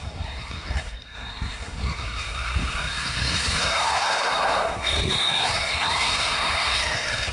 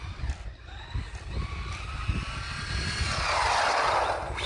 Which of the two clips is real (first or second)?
second